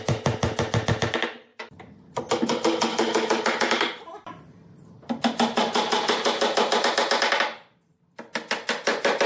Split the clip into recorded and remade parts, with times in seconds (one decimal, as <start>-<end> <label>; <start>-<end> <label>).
0.0-9.3 recorded